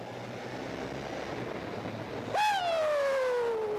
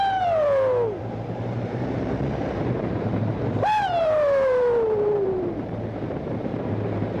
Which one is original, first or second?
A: first